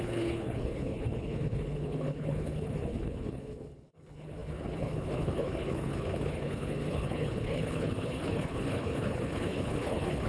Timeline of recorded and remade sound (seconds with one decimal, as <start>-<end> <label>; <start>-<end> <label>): 0.0-10.3 remade